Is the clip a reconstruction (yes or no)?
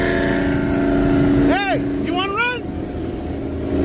no